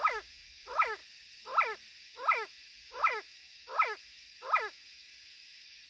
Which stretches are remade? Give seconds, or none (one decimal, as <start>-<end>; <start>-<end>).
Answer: 0.0-1.0; 2.0-5.9